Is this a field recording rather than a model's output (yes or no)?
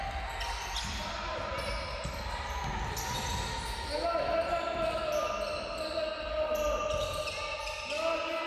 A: yes